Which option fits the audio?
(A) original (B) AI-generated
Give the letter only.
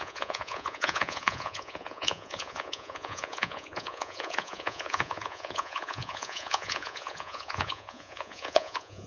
B